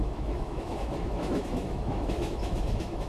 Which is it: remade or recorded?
remade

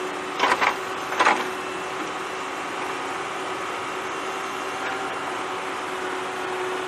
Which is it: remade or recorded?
recorded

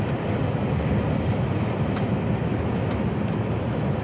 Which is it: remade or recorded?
recorded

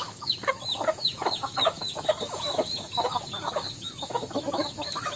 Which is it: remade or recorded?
remade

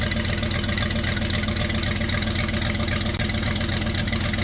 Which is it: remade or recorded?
recorded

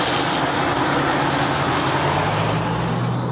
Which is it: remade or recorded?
recorded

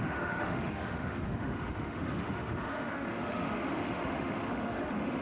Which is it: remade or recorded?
remade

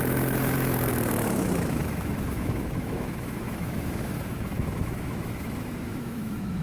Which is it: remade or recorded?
remade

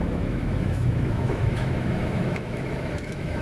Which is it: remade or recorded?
remade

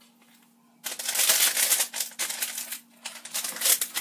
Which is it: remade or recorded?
recorded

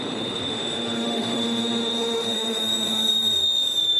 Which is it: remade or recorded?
remade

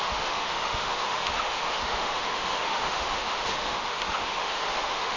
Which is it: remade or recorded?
remade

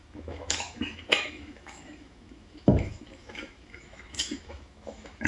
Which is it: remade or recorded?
remade